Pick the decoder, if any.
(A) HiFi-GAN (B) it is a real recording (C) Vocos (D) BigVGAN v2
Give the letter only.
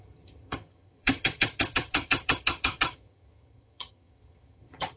A